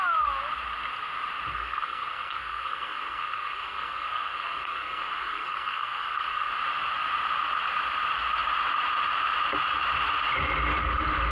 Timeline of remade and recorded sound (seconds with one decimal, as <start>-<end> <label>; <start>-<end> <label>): 0.0-1.5 recorded; 1.5-6.5 remade; 6.5-11.3 recorded